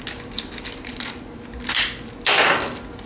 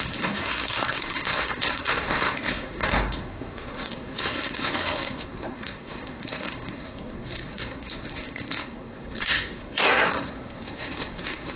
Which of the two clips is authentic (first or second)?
first